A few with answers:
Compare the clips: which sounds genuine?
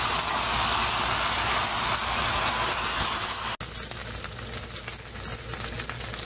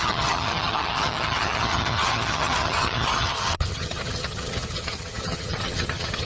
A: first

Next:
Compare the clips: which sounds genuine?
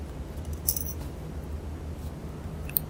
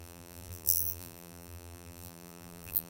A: first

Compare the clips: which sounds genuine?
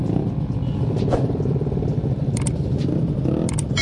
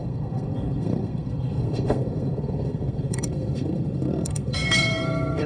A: first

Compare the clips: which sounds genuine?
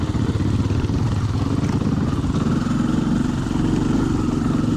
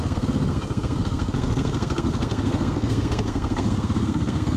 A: first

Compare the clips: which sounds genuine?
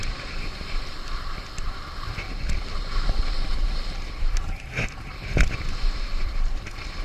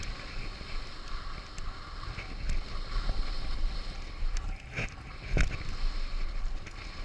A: second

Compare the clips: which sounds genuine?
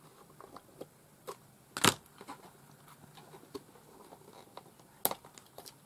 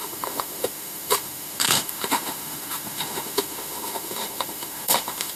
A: first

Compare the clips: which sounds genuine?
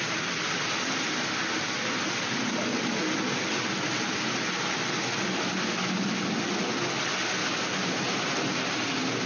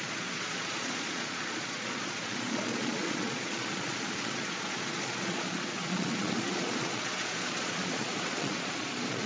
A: first